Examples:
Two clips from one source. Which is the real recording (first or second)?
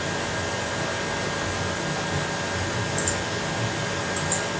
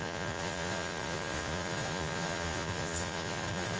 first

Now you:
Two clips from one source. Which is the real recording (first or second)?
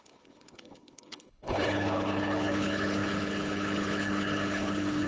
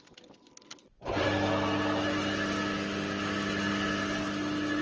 second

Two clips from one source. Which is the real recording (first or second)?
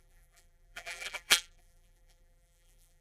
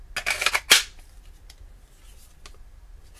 second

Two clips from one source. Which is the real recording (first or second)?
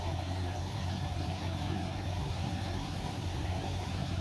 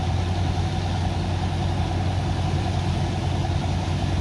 second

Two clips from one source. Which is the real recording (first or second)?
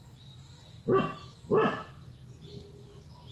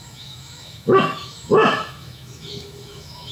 first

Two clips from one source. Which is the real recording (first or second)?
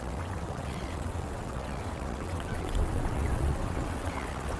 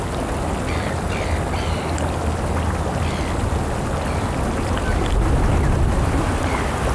second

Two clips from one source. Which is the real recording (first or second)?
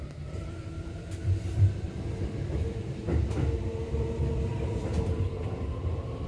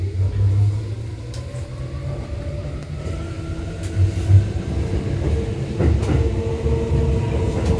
second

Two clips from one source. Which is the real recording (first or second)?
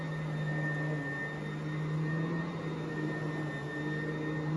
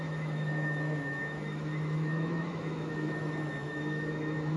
first